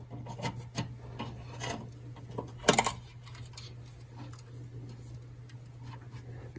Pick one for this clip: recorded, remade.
recorded